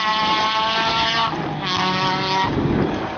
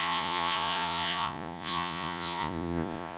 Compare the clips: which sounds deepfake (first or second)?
second